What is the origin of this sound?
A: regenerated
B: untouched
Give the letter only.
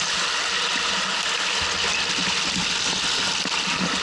B